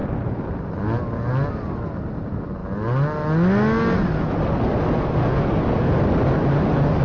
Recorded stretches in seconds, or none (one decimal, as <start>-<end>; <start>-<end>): 0.0-7.0